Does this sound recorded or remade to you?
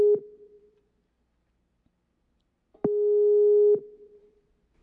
recorded